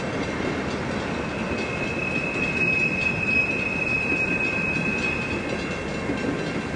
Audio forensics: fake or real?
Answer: real